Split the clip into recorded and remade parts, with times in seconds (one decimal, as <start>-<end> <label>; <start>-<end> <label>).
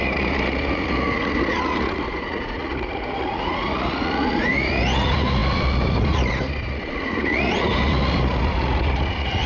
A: 0.0-9.5 remade